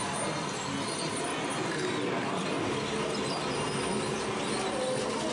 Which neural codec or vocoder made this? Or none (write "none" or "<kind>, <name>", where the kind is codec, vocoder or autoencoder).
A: none